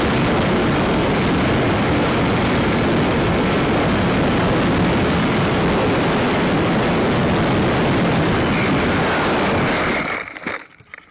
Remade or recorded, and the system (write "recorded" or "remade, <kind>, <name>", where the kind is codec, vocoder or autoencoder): recorded